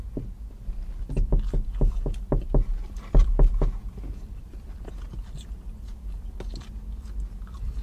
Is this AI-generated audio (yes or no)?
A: no